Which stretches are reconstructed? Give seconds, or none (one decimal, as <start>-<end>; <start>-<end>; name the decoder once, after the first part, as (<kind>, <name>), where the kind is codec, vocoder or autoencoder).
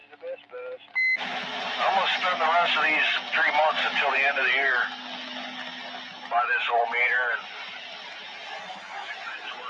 none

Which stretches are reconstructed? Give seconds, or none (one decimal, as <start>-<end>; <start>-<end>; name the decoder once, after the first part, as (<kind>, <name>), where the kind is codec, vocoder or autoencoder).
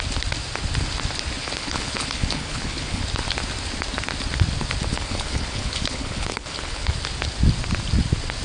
1.4-3.0 (codec, HILCodec); 4.9-6.9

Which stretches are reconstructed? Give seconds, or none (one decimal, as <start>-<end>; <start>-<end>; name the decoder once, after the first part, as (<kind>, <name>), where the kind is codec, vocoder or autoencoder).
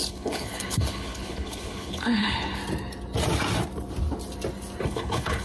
0.0-2.6 (codec, HILCodec); 4.8-5.4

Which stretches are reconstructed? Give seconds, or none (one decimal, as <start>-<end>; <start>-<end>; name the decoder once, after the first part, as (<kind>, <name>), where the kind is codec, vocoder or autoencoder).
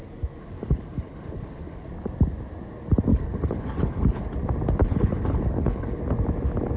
0.4-1.9 (codec, HILCodec); 3.1-4.2; 4.8-6.0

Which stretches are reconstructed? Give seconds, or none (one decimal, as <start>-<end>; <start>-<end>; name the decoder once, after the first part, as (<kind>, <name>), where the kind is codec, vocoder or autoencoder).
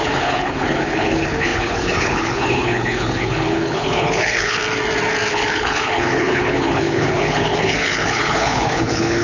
0.0-4.6 (codec, HILCodec); 5.3-9.2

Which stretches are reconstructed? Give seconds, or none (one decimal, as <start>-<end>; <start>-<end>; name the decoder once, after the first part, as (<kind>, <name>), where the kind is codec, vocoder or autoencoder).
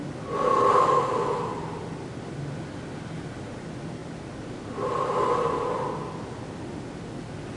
none